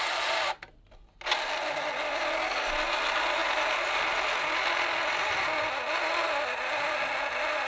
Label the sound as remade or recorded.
recorded